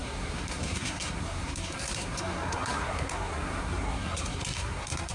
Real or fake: fake